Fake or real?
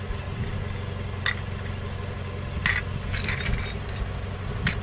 real